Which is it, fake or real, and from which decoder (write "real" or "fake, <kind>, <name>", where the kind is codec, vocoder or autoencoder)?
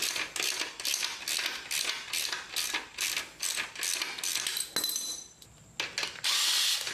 real